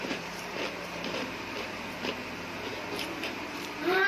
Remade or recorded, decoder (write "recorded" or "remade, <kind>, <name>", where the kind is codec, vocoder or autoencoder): remade, vocoder, BigVGAN v2